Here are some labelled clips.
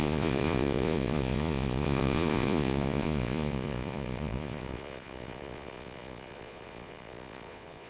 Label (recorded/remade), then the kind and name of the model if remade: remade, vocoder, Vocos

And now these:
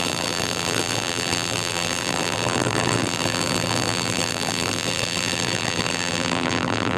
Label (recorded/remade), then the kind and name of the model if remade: remade, vocoder, BigVGAN v2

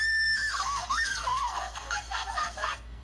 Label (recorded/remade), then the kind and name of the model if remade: remade, codec, SNAC